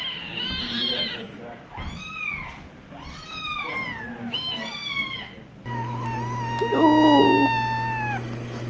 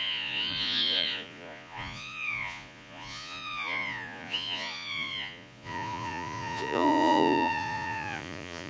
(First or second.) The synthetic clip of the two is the second